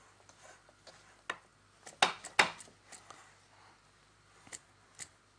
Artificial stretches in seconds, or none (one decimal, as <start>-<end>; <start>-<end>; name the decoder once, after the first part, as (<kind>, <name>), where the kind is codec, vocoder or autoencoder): none